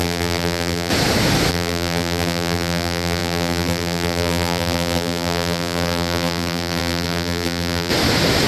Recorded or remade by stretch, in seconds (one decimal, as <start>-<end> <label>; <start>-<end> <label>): 0.0-0.9 remade; 0.9-1.5 recorded; 1.5-7.9 remade; 7.9-8.5 recorded